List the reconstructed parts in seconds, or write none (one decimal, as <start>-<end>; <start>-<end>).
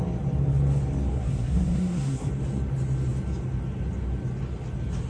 1.1-2.3